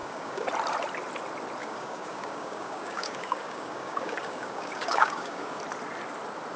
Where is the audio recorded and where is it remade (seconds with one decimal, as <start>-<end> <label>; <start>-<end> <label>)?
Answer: 0.0-0.5 remade; 0.5-1.6 recorded; 1.6-5.6 remade; 5.6-6.6 recorded